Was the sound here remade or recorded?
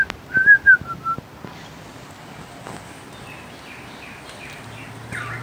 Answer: recorded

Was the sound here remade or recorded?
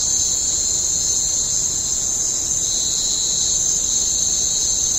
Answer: recorded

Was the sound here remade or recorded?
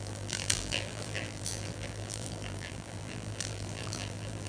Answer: remade